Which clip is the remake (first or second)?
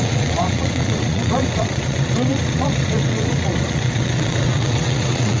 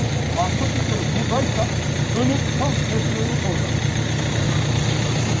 first